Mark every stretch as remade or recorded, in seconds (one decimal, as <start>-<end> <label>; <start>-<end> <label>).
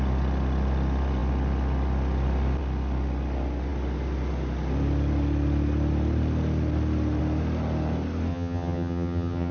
0.0-8.3 recorded; 8.3-9.5 remade